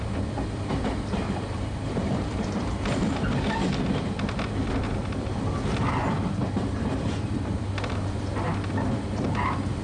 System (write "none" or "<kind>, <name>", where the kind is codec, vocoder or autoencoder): vocoder, BigVGAN v2